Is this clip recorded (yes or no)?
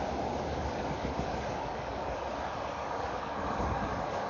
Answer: no